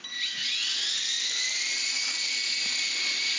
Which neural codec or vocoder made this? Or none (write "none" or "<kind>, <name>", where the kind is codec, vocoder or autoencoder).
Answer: none